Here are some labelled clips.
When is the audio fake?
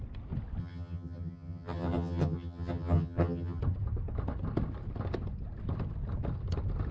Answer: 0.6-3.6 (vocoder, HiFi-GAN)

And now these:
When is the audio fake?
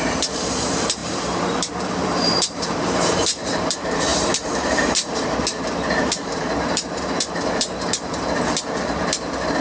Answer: 0.0-9.6 (vocoder, BigVGAN v2)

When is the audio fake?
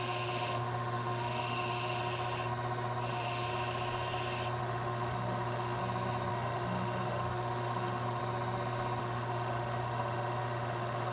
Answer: 0.0-2.0 (autoencoder, DAC-VAE); 3.1-3.5; 4.6-5.8; 6.3-8.2; 9.0-11.1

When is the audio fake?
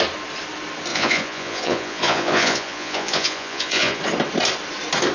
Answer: 0.9-4.0 (vocoder, Vocos)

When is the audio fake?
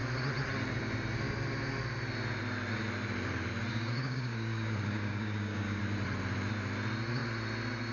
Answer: 3.7-5.8 (codec, DAC)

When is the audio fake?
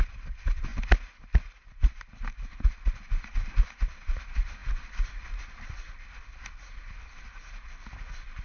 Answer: 4.6-5.8 (vocoder, BigVGAN v2)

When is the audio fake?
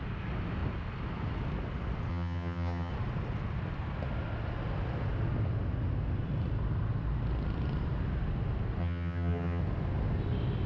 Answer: 2.1-2.9 (vocoder, HiFi-GAN); 8.8-9.6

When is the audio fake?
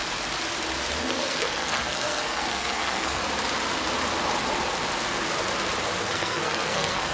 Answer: 1.0-3.2 (codec, SNAC); 6.1-7.1